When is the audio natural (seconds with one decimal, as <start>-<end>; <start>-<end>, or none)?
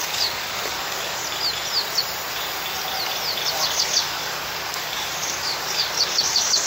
1.2-3.5